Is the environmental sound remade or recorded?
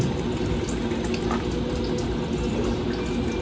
recorded